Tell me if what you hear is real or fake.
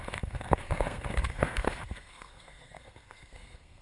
fake